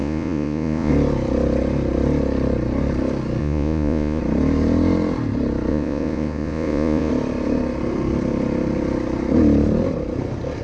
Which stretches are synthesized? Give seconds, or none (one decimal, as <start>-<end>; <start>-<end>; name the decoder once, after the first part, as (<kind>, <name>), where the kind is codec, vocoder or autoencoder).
0.0-0.9 (vocoder, Vocos); 3.4-4.2; 5.7-7.1